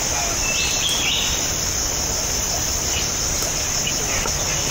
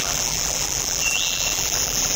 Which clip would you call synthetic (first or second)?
second